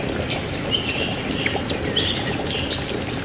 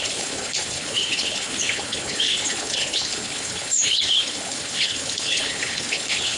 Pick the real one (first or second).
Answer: first